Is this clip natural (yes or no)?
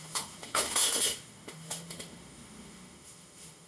no